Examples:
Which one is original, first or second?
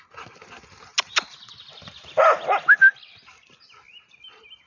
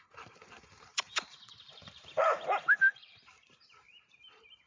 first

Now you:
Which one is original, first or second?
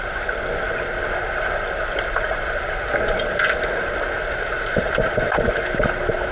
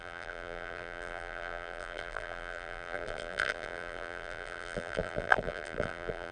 first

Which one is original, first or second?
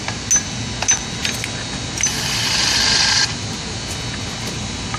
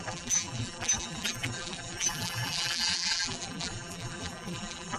first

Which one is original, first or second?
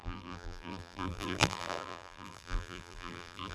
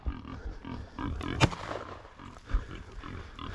second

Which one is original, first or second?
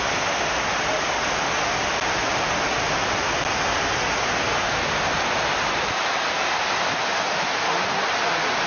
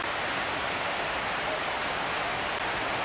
first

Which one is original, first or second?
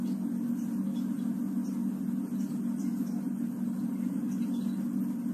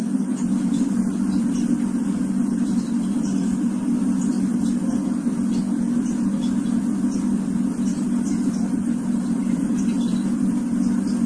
first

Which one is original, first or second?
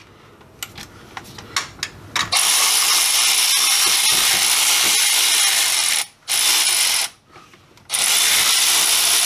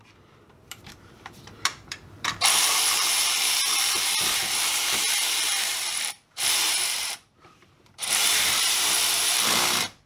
first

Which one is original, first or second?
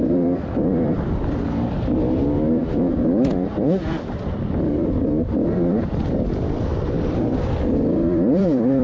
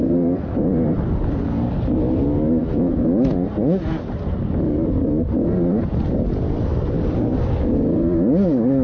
second